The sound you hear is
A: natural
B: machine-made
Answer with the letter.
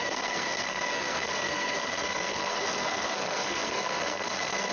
B